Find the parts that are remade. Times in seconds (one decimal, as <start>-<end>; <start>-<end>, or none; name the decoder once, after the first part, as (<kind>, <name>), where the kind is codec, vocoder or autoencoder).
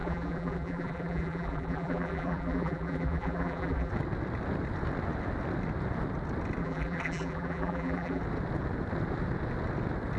0.0-3.9 (vocoder, BigVGAN v2); 6.6-8.2